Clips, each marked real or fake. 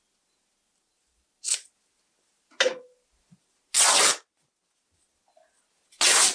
real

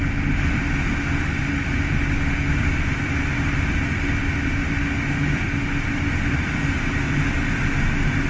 real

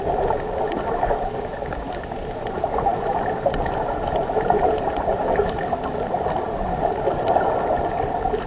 real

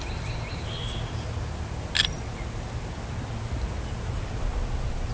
real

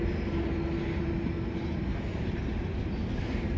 real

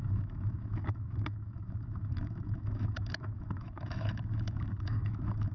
fake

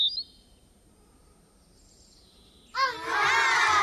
real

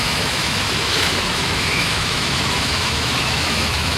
fake